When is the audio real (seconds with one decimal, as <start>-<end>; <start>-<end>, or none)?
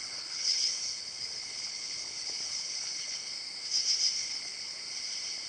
3.3-4.2; 4.8-5.5